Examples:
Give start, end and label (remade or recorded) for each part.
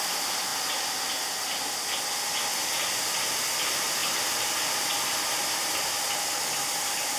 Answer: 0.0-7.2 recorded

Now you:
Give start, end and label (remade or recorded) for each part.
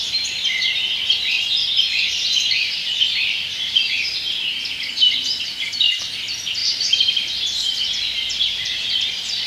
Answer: 0.0-6.6 recorded; 6.6-9.1 remade; 9.1-9.5 recorded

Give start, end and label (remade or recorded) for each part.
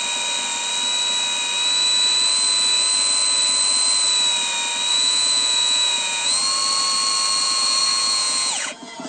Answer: 0.0-4.9 recorded; 4.9-6.4 remade; 6.4-7.4 recorded; 7.4-9.1 remade